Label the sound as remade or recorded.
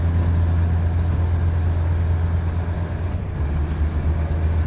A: recorded